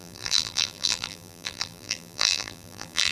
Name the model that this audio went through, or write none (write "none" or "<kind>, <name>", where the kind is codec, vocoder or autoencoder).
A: vocoder, BigVGAN v2